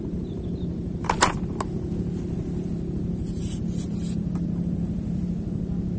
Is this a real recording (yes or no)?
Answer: yes